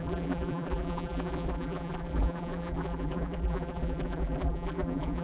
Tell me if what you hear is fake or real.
fake